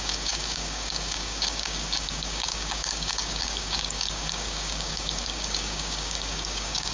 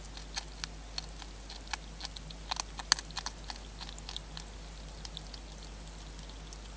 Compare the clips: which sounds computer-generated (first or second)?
first